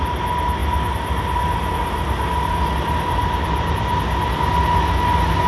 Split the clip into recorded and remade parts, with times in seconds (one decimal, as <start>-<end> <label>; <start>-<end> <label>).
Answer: 0.0-5.5 recorded